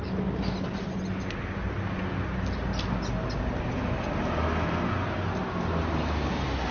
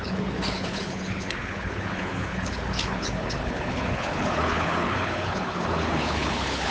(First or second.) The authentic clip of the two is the first